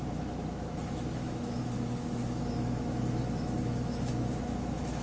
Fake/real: fake